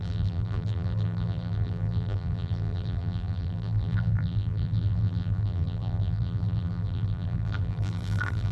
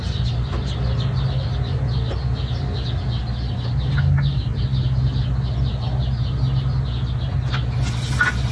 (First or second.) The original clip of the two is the second